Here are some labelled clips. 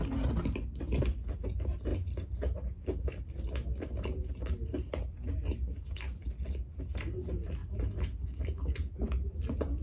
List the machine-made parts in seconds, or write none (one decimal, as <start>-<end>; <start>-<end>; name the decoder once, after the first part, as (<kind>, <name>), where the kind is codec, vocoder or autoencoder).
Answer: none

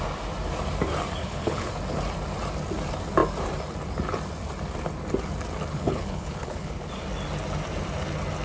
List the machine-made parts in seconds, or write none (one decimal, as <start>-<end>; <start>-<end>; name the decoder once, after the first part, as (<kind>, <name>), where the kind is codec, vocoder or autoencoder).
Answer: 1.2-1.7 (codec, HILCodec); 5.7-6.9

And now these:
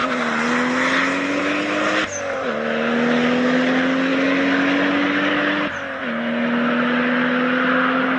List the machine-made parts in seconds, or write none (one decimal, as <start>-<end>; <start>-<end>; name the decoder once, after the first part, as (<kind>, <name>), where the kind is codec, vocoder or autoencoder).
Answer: none